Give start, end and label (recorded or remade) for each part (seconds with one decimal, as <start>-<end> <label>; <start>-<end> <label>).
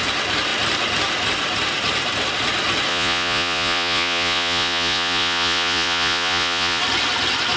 0.0-2.9 recorded; 2.9-6.8 remade; 6.8-7.6 recorded